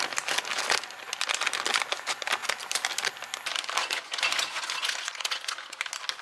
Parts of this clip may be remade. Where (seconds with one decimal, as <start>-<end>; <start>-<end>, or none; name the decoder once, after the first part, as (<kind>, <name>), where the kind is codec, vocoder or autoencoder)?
3.8-5.8 (vocoder, Vocos)